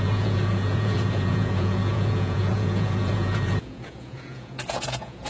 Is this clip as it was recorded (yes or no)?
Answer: no